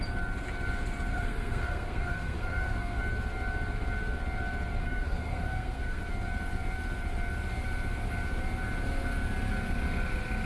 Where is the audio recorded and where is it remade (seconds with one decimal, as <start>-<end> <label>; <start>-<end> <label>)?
0.0-1.1 recorded; 1.1-3.0 remade; 3.0-4.8 recorded; 4.8-6.0 remade; 6.0-10.5 recorded